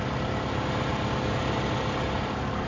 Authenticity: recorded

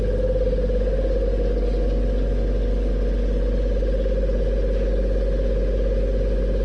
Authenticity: recorded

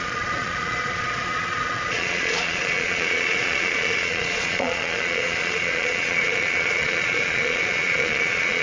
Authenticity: remade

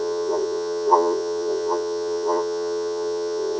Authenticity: remade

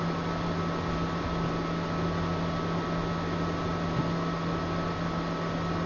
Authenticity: recorded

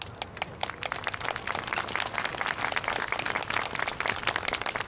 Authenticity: recorded